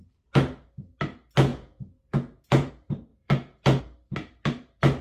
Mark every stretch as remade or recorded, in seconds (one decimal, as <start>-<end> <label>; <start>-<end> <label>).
0.0-1.5 recorded; 1.5-2.7 remade; 2.7-3.1 recorded; 3.1-3.8 remade; 3.8-5.0 recorded